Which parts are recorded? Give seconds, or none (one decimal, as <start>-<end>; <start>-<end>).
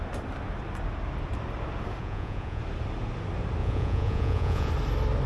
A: 0.0-2.0; 2.6-3.6; 4.7-5.3